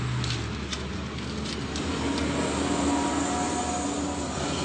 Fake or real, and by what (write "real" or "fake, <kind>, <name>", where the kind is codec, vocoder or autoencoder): real